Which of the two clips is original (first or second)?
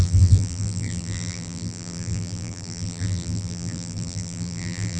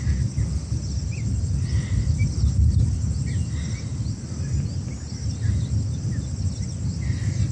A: second